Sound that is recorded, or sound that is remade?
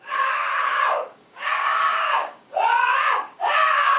remade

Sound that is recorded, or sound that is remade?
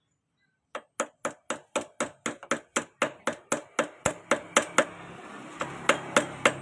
recorded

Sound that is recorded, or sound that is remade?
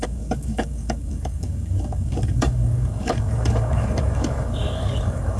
remade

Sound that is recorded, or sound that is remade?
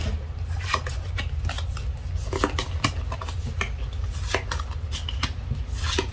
recorded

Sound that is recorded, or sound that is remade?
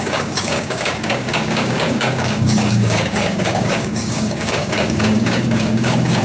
remade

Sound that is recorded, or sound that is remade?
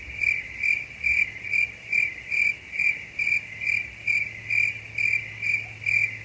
recorded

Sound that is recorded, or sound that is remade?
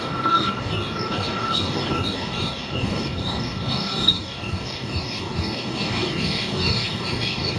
remade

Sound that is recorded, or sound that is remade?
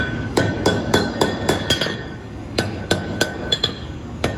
remade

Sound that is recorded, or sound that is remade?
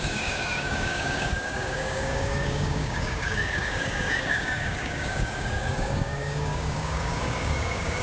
remade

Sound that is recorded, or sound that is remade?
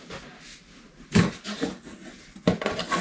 recorded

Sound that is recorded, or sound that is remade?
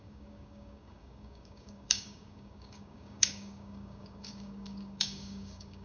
remade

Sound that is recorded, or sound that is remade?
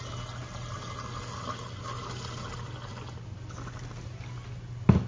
recorded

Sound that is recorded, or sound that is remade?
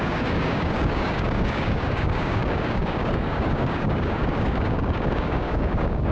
remade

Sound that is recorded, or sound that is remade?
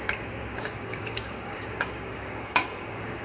remade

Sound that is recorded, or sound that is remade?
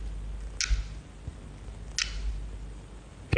recorded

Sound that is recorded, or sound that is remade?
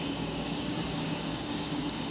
remade